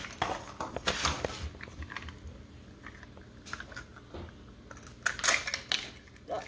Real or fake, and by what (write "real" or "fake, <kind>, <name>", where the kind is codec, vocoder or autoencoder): real